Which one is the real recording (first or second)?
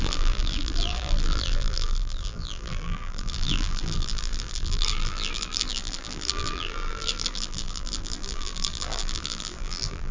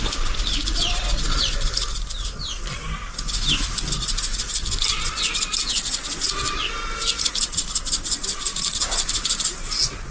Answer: second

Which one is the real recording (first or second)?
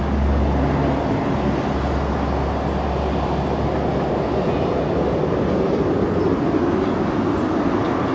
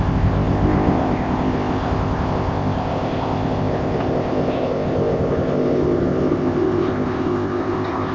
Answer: first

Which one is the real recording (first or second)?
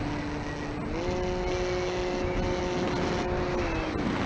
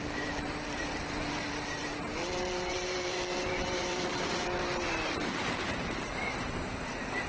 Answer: first